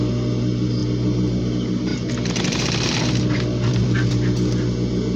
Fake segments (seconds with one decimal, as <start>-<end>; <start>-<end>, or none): none